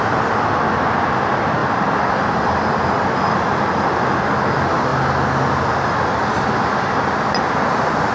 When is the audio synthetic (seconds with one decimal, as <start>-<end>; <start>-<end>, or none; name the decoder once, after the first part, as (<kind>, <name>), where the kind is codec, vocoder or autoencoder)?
1.6-3.0 (vocoder, BigVGAN v2)